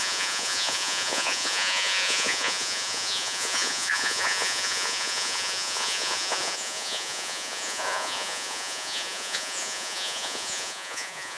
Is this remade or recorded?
remade